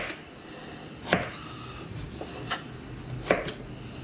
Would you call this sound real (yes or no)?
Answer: yes